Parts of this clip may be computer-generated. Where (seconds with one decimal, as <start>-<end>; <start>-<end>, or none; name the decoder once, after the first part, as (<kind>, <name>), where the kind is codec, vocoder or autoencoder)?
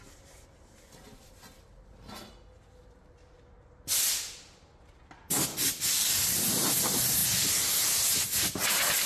none